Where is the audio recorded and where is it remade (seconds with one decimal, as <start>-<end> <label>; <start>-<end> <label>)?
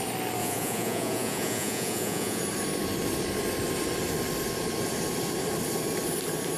0.0-0.4 recorded; 0.4-2.4 remade; 2.4-6.6 recorded